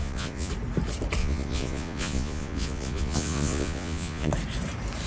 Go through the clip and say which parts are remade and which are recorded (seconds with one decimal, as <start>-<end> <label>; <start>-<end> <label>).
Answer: 0.0-0.5 remade; 0.5-1.2 recorded; 1.2-4.3 remade; 4.3-5.1 recorded